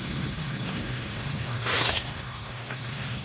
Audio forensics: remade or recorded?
remade